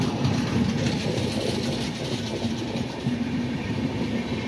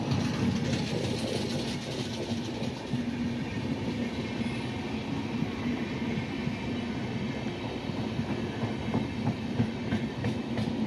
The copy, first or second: first